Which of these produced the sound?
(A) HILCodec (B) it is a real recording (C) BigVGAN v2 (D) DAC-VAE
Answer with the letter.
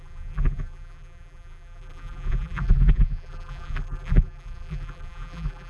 C